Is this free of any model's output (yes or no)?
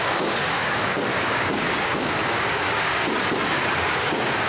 no